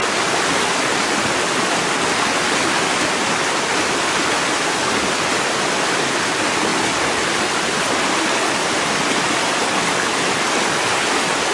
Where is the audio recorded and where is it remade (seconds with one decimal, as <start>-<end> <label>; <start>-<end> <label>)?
0.0-11.5 recorded